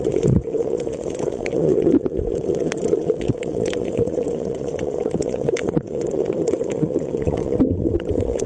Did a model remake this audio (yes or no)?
yes